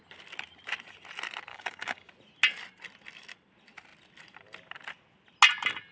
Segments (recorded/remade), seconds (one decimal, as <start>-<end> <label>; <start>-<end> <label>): 0.0-1.5 recorded; 1.5-2.1 remade; 2.1-5.9 recorded